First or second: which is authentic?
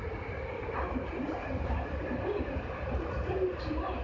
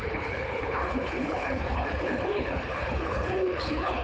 first